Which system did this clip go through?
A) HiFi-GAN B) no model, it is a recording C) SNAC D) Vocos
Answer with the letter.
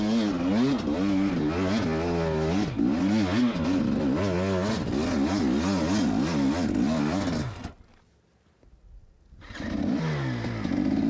B